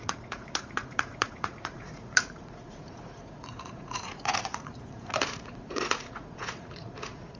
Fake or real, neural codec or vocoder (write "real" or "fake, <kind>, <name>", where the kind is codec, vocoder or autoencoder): fake, vocoder, Vocos